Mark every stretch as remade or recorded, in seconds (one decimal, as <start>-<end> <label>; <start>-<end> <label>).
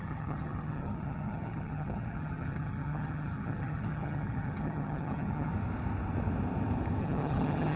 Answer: 0.0-5.5 remade; 5.5-7.0 recorded; 7.0-7.8 remade